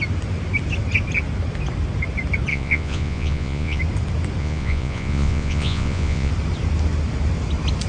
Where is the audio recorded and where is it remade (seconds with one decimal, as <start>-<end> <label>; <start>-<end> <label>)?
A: 0.0-2.5 recorded; 2.5-3.8 remade; 3.8-4.4 recorded; 4.4-6.3 remade; 6.3-7.9 recorded